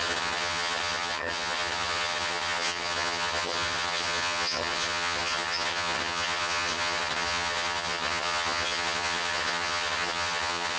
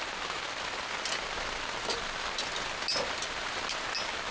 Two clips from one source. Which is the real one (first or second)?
second